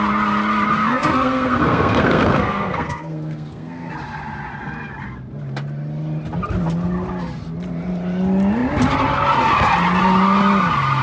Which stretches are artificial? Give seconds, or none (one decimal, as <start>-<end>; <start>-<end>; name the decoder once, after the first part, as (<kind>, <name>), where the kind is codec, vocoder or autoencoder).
0.8-3.9 (codec, SNAC)